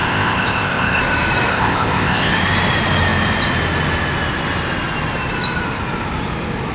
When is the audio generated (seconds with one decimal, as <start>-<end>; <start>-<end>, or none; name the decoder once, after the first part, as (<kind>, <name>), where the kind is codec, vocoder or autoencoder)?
0.0-1.0 (codec, ZipCodec); 1.5-2.3